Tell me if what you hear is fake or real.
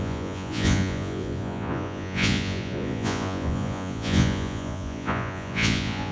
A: fake